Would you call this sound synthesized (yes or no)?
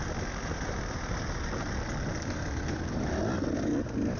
no